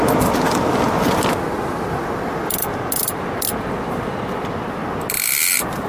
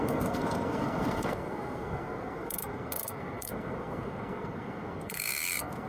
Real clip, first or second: first